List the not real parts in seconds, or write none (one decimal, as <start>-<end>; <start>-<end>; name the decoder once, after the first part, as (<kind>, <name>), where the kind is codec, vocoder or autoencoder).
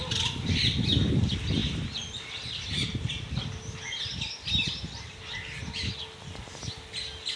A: 1.6-6.0 (vocoder, BigVGAN v2)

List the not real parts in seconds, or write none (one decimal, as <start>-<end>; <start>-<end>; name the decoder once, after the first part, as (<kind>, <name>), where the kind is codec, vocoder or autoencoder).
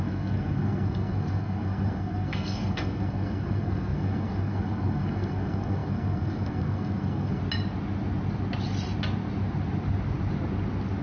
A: 0.0-7.4 (codec, SNAC)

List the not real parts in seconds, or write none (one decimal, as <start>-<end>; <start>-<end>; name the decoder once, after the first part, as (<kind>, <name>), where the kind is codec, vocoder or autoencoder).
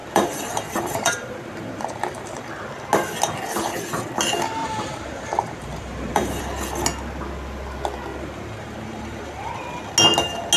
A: 0.0-2.5 (vocoder, BigVGAN v2); 4.6-6.4; 8.1-9.5